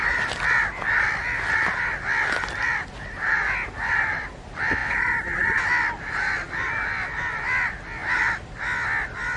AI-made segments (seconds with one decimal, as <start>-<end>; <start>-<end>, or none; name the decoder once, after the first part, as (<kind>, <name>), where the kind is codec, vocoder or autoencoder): none